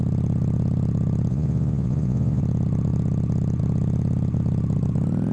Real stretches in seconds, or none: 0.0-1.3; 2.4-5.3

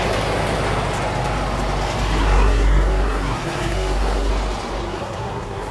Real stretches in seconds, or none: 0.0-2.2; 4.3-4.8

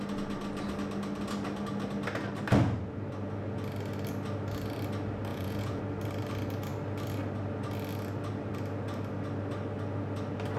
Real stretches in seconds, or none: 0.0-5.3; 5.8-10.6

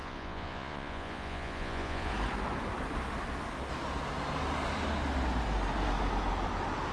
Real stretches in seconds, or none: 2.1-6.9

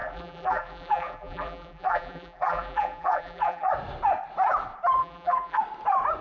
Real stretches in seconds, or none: 3.7-5.0; 5.6-6.2